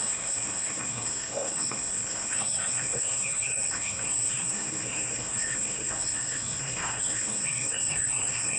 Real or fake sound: fake